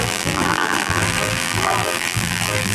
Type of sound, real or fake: fake